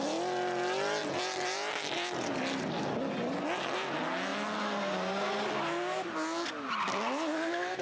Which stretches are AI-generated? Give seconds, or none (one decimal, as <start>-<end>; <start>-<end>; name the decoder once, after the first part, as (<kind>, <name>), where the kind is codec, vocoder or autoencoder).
none